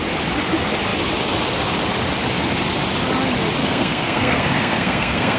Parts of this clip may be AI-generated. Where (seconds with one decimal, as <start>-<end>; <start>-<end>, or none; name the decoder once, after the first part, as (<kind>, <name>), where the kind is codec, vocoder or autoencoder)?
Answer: 3.6-5.4 (codec, SNAC)